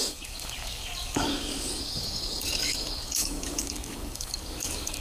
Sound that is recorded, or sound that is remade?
remade